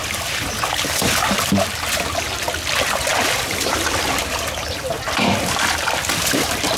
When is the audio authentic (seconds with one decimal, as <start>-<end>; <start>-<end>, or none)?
0.5-3.1